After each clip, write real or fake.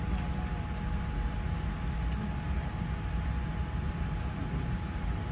real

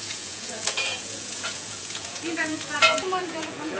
fake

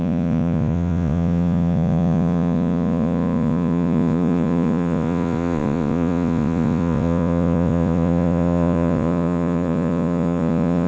fake